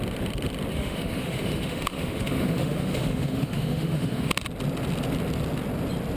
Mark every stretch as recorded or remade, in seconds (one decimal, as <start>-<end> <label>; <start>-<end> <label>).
0.0-0.7 recorded; 0.7-4.3 remade; 4.3-6.2 recorded